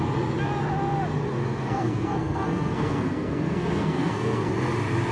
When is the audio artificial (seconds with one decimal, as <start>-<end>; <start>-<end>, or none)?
1.4-4.5